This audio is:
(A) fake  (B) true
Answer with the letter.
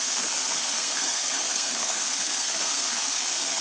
A